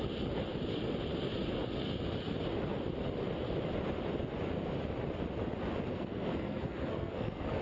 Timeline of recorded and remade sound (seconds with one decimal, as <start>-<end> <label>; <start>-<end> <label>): 0.0-5.9 recorded; 5.9-7.6 remade